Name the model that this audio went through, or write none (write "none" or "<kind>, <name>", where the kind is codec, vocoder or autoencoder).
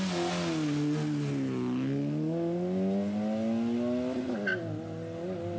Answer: none